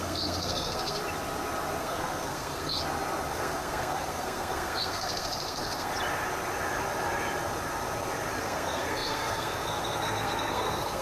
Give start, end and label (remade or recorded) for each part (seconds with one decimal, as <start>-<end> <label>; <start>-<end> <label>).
0.0-1.0 remade; 1.0-1.8 recorded; 1.8-2.8 remade; 2.8-3.3 recorded; 3.3-5.9 remade; 5.9-8.4 recorded; 8.4-11.0 remade

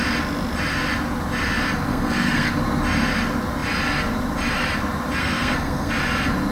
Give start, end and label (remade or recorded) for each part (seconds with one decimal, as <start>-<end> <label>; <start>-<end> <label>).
0.0-1.9 recorded; 1.9-2.5 remade; 2.5-5.2 recorded; 5.2-5.9 remade; 5.9-6.5 recorded

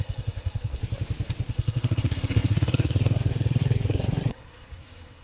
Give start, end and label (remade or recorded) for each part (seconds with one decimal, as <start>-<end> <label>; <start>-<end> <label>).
0.0-0.8 remade; 0.8-1.5 recorded; 1.5-5.2 remade

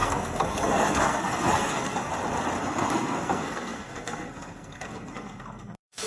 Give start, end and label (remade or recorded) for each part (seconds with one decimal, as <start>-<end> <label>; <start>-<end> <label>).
0.0-2.1 remade; 2.1-2.6 recorded; 2.6-6.1 remade